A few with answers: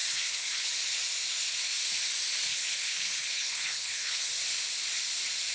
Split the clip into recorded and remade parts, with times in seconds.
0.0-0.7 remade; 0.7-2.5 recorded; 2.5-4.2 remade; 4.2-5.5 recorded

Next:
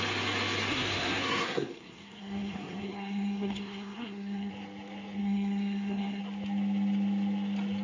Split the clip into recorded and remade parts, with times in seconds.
0.0-0.7 recorded; 0.7-4.5 remade; 4.5-5.2 recorded; 5.2-6.2 remade; 6.2-7.8 recorded

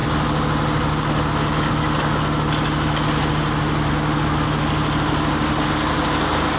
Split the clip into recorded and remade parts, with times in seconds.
0.0-6.6 recorded

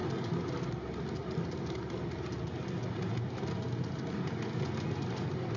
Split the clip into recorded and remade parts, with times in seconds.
0.0-5.6 recorded

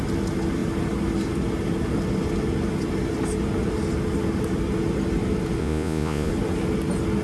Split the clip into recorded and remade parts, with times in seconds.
0.0-5.6 recorded; 5.6-6.3 remade; 6.3-7.2 recorded

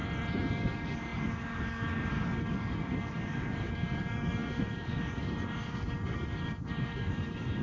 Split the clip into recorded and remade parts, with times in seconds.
0.0-0.5 recorded; 0.5-7.6 remade